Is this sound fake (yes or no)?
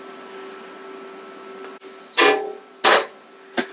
no